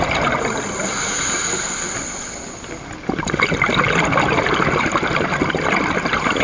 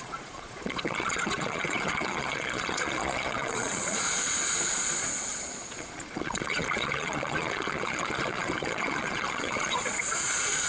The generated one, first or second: second